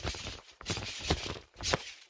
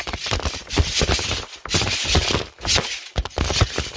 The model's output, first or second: first